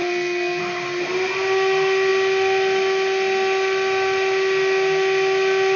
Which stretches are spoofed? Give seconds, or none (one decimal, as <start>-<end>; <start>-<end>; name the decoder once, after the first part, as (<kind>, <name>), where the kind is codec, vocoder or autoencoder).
0.0-0.6 (codec, SNAC)